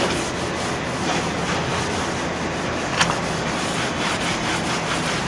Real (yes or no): yes